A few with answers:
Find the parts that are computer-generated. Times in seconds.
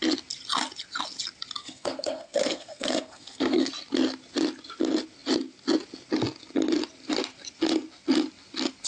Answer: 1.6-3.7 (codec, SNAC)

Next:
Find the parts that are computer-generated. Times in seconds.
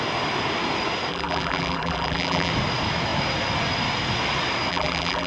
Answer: 1.1-2.5 (vocoder, BigVGAN v2); 4.7-5.3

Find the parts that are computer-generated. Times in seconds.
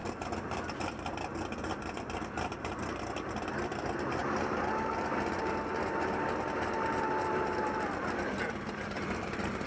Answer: 0.0-4.2 (vocoder, BigVGAN v2); 6.9-9.7